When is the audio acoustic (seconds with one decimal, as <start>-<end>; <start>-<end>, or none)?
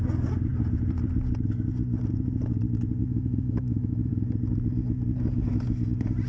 0.0-3.0; 4.1-6.3